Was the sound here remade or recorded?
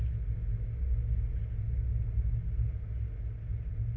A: recorded